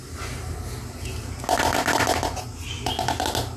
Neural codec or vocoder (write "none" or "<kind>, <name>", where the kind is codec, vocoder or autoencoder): none